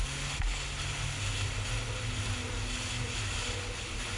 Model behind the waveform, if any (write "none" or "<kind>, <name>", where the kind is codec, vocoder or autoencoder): none